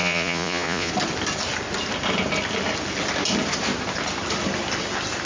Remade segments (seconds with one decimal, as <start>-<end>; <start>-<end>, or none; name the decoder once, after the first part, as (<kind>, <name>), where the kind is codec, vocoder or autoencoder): 0.0-0.9 (vocoder, Vocos)